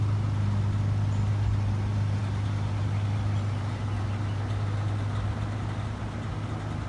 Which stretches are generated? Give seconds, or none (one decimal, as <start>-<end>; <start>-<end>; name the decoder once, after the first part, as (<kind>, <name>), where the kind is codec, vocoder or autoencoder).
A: none